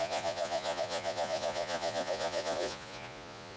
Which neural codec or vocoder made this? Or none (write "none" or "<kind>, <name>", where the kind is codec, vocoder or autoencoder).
vocoder, Vocos